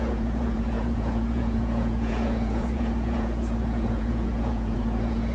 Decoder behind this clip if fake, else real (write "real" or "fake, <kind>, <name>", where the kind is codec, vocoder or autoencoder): fake, vocoder, Vocos